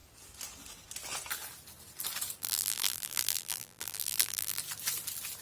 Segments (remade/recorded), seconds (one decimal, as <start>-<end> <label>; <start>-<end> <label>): 0.0-2.4 recorded; 2.4-4.6 remade; 4.6-5.4 recorded